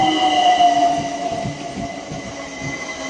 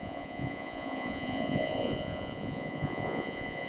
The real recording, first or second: first